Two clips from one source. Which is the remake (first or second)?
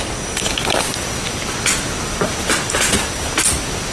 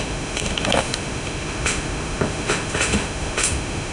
second